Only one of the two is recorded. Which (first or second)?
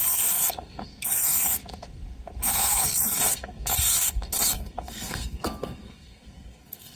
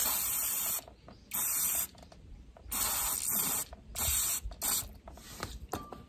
second